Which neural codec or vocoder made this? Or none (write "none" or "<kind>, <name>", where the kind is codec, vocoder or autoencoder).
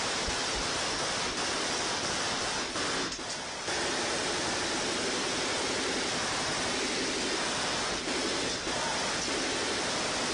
vocoder, BigVGAN v2